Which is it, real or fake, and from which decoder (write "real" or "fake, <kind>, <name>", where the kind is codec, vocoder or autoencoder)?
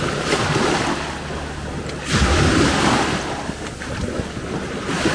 real